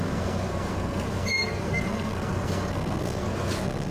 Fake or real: fake